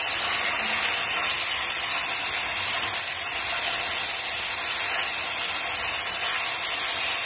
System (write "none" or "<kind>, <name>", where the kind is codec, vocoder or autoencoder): none